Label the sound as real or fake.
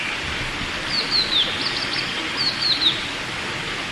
real